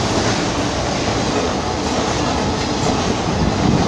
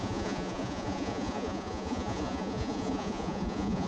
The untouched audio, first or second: first